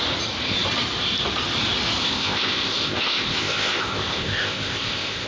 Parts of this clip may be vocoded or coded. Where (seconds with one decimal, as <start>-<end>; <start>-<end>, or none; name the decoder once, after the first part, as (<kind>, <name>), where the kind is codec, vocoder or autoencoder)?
2.0-5.3 (codec, ZipCodec)